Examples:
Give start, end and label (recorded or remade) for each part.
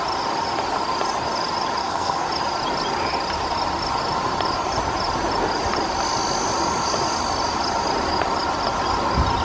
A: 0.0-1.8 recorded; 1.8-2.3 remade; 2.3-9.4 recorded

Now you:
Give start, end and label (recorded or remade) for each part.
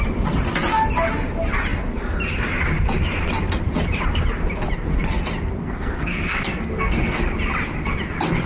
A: 0.0-5.6 recorded; 5.6-7.2 remade; 7.2-8.5 recorded